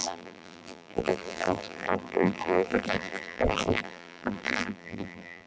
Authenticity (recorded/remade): remade